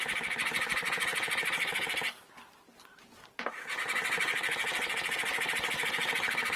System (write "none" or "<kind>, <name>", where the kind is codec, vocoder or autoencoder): none